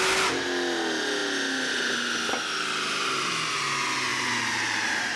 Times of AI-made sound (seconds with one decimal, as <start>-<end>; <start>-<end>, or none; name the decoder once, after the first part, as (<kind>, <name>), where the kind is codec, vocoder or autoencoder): 4.1-5.2 (vocoder, BigVGAN v2)